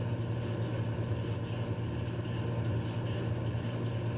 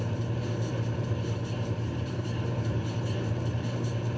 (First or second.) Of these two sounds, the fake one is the second